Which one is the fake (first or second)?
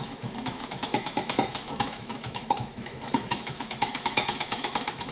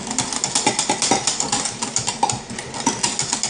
first